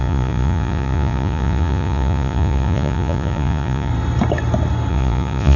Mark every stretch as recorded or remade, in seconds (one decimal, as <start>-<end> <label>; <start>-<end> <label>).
0.0-3.9 remade; 3.9-4.9 recorded; 4.9-5.6 remade